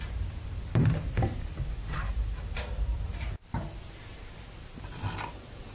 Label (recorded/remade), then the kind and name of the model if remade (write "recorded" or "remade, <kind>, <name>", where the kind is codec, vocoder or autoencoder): remade, vocoder, BigVGAN v2